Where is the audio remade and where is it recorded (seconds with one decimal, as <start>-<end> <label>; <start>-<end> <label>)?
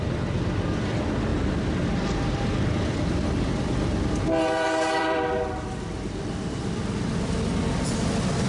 0.0-8.5 remade